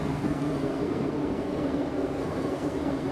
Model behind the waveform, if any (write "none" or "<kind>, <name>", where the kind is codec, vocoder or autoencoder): codec, SNAC